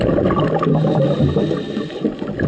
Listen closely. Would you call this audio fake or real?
real